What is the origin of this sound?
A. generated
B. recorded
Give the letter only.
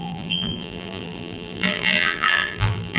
A